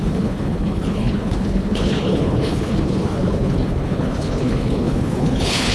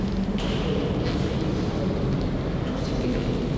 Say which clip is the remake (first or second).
first